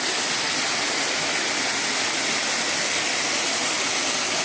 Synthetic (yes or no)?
no